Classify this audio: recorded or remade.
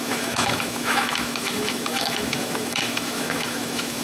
remade